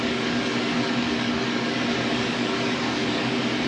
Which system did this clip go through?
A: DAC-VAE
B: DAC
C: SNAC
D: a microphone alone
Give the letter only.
B